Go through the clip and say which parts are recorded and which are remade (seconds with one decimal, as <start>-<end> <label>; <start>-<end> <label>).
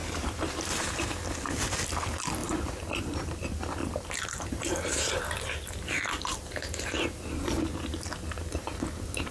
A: 0.0-0.6 remade; 0.6-2.4 recorded; 2.4-3.0 remade; 3.0-3.8 recorded; 3.8-7.6 remade; 7.6-9.3 recorded